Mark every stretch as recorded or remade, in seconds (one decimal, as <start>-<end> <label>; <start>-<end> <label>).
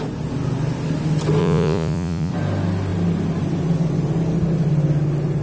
0.0-1.4 recorded; 1.4-2.3 remade; 2.3-5.4 recorded